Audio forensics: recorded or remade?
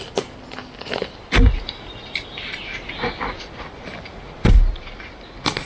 recorded